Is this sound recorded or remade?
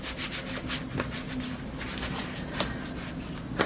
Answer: recorded